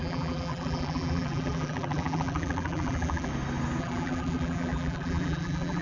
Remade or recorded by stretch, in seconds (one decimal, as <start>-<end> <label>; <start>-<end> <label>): 0.0-3.3 remade; 3.3-3.8 recorded; 3.8-5.8 remade